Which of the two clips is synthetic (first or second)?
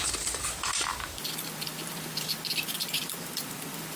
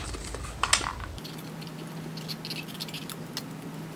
first